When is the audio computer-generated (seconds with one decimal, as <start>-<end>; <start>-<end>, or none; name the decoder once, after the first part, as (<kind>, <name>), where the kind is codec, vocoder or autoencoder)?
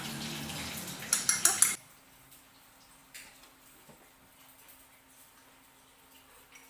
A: none